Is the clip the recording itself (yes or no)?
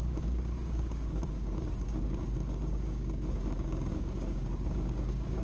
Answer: no